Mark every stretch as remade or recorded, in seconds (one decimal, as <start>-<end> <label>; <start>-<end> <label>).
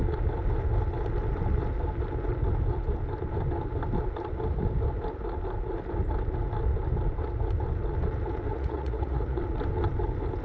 0.0-8.5 recorded; 8.5-9.4 remade; 9.4-10.4 recorded